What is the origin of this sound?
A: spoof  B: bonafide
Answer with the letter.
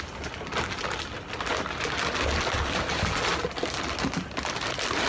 B